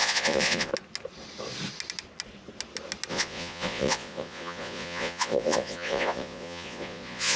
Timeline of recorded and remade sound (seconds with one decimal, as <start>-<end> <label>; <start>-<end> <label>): 0.0-0.7 remade; 0.7-3.1 recorded; 3.1-7.4 remade